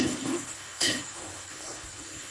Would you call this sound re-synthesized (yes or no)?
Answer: yes